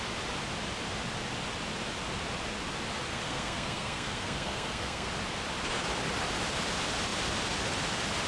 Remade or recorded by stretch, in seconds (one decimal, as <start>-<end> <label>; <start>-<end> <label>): 0.0-3.1 recorded; 3.1-5.1 remade; 5.1-8.3 recorded